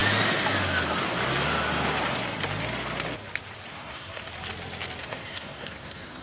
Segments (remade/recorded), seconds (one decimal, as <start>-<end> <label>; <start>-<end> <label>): 0.0-3.7 recorded; 3.7-4.2 remade; 4.2-5.0 recorded; 5.0-6.2 remade